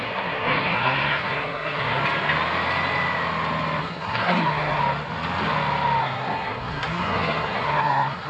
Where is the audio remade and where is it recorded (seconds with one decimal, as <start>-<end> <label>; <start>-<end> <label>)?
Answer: 0.0-2.0 remade; 2.0-3.8 recorded; 3.8-4.8 remade; 4.8-6.0 recorded; 6.0-8.3 remade